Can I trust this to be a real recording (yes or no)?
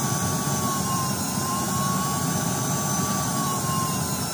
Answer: no